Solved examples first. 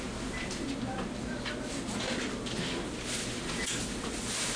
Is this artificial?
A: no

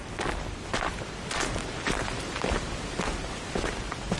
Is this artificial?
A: no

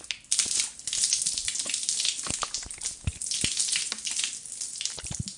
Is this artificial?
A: no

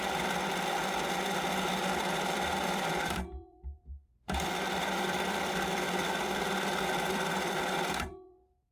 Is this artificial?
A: yes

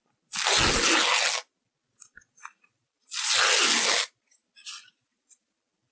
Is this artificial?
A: no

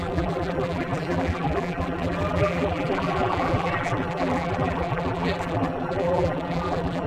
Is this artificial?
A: yes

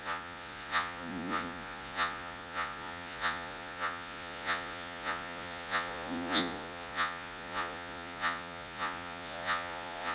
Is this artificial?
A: yes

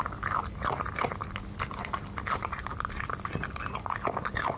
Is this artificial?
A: no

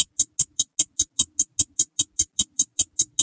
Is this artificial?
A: no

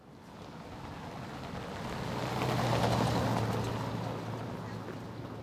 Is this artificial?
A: no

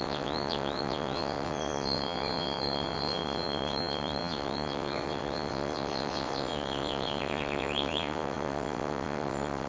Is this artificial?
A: yes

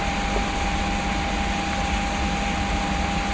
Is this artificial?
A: no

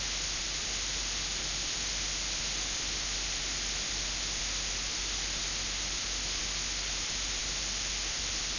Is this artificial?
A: no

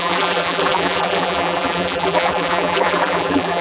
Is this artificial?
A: yes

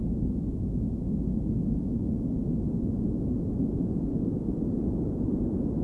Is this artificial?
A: no